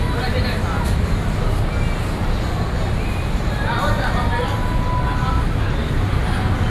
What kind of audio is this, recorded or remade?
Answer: recorded